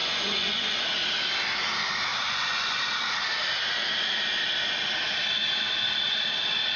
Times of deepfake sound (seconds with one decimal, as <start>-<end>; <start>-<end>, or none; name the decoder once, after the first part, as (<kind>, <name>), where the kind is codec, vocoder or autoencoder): 0.0-0.8 (vocoder, Vocos); 2.1-2.8

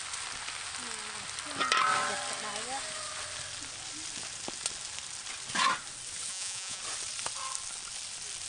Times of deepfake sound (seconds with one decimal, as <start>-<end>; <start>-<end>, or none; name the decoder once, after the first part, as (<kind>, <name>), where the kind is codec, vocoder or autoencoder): 6.3-6.8 (vocoder, Vocos)

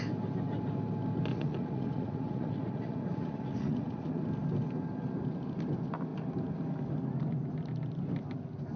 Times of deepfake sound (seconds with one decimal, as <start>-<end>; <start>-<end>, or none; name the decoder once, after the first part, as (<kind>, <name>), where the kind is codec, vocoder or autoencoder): 1.3-4.2 (vocoder, Vocos)

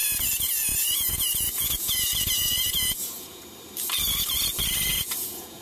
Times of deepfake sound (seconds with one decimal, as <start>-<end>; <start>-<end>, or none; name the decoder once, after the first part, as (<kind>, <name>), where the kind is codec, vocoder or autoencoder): 0.0-3.4 (vocoder, Vocos); 4.9-5.6

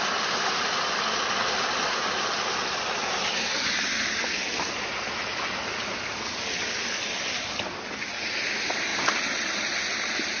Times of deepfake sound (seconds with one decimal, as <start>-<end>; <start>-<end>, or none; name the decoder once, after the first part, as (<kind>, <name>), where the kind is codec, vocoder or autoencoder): none